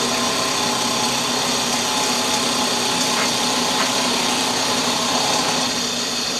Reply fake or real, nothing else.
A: real